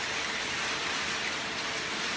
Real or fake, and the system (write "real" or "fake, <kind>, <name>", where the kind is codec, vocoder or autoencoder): fake, vocoder, BigVGAN v2